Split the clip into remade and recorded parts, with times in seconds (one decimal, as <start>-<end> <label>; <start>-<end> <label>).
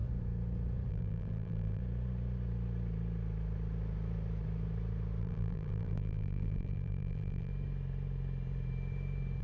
0.0-0.9 recorded; 0.9-1.8 remade; 1.8-5.2 recorded; 5.2-7.5 remade; 7.5-9.4 recorded